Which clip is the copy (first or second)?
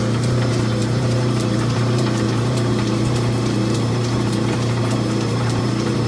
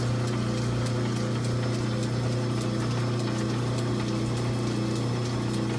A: first